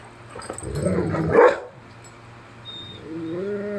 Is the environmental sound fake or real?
real